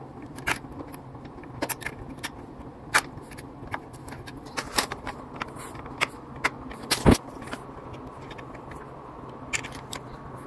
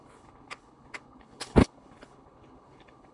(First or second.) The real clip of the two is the first